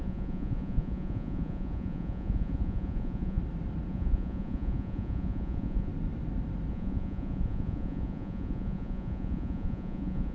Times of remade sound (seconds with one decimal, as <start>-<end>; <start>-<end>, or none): 0.0-3.4; 3.9-5.9; 6.7-10.3